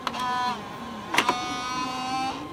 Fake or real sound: real